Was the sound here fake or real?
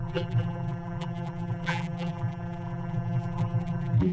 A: fake